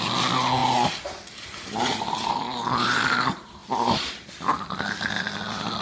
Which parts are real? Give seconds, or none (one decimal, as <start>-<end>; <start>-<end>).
0.0-5.8